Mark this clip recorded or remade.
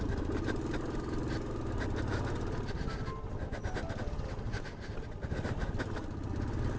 recorded